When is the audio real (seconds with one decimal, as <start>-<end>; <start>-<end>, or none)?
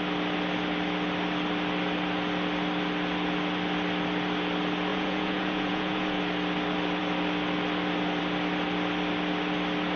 0.0-4.9; 6.2-10.0